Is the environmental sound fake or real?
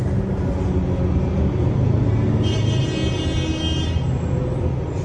real